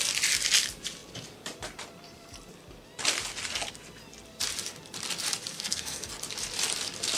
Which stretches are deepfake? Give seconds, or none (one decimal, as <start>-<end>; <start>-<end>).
5.5-6.1